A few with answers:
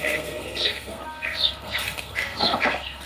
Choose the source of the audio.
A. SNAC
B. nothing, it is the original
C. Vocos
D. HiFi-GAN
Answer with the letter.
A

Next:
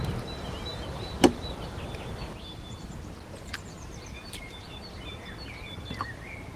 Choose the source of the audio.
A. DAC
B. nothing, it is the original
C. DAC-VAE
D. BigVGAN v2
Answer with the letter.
B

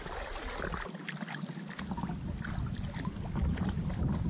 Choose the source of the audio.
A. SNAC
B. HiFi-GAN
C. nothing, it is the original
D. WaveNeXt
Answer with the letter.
C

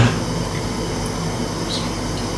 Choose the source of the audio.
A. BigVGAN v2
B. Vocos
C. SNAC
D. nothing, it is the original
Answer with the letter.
D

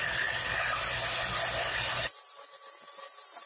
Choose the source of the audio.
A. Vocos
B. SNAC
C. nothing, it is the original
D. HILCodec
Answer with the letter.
C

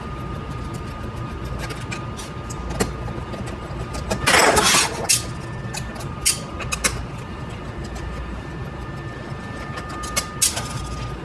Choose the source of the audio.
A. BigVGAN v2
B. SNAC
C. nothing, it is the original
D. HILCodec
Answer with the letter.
C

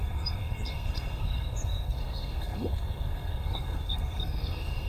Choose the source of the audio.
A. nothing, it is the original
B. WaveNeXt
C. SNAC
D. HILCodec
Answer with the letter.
C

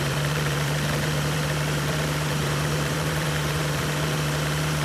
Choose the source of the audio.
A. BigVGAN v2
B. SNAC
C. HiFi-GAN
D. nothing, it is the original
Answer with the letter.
A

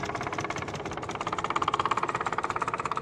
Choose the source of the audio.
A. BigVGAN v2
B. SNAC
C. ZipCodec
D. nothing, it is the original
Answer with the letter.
D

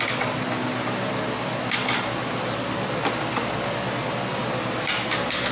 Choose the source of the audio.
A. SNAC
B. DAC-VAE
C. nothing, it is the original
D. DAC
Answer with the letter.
C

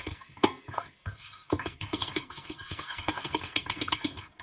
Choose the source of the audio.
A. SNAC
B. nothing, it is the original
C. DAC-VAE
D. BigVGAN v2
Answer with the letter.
A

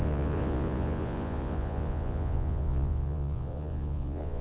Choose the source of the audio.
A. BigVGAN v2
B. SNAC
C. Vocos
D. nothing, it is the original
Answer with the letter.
C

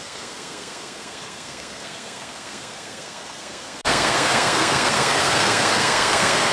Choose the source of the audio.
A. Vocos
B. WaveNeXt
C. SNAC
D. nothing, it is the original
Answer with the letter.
C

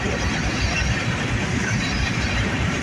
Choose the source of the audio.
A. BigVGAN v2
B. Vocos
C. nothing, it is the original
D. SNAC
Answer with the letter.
A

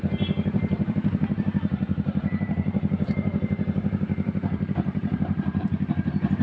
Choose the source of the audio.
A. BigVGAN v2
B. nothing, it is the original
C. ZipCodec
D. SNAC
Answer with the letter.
A